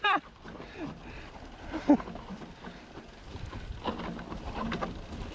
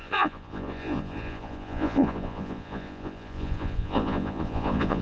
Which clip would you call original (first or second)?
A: first